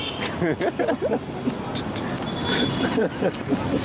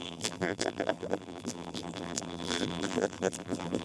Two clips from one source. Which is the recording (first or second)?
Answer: first